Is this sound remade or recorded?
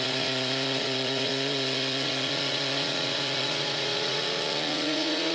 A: remade